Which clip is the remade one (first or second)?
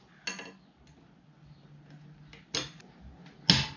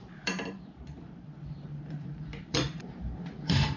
second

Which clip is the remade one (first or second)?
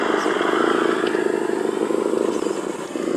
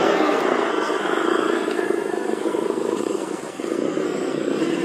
second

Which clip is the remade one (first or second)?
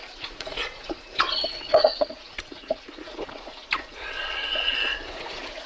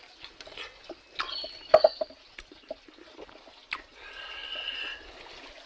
first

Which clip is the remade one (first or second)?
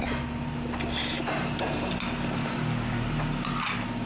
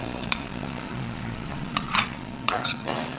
second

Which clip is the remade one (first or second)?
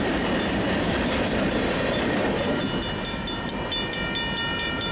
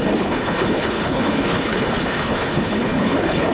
second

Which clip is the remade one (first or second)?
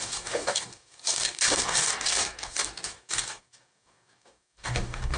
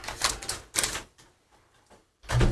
first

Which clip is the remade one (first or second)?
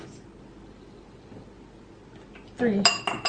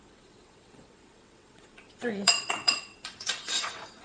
second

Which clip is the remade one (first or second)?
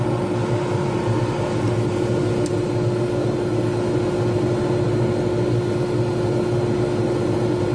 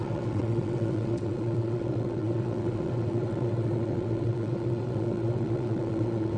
second